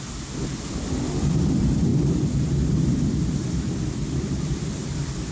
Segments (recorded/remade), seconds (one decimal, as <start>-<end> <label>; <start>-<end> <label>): 0.0-5.3 remade